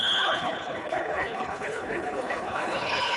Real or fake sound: fake